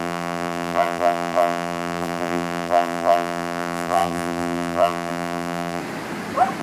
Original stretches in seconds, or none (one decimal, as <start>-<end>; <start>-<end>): 5.8-6.6